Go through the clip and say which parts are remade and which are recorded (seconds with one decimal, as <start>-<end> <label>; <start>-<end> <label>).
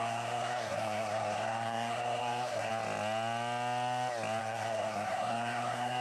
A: 0.0-2.7 remade; 2.7-4.4 recorded; 4.4-6.0 remade